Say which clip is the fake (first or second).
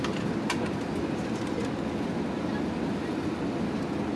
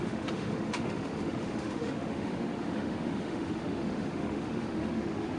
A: second